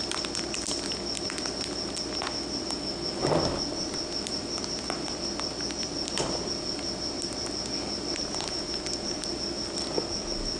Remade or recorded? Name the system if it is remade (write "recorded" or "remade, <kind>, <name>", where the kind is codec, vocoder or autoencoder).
recorded